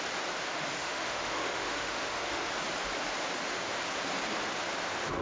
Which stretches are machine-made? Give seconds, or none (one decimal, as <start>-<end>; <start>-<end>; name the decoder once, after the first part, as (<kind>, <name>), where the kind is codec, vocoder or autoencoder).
0.8-2.5 (autoencoder, DAC-VAE)